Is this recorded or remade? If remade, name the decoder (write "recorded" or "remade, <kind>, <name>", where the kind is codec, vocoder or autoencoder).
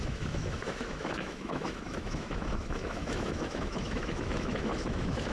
remade, autoencoder, DAC-VAE